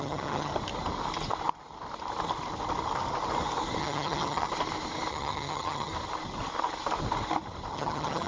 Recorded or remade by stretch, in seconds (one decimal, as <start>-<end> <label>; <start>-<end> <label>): 0.0-0.5 remade; 0.5-3.8 recorded; 3.8-4.5 remade; 4.5-5.1 recorded; 5.1-5.9 remade; 5.9-7.7 recorded; 7.7-8.3 remade